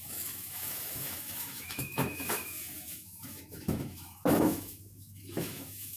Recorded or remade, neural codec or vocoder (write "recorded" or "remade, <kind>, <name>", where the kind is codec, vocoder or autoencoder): remade, autoencoder, DAC-VAE